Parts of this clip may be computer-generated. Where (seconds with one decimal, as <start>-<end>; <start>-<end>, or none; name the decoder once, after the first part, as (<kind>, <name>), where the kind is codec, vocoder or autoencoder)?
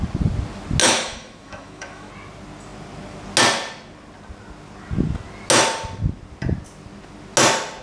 0.8-2.1 (autoencoder, DAC-VAE)